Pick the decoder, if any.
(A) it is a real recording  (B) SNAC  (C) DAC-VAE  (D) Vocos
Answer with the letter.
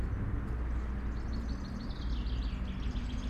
A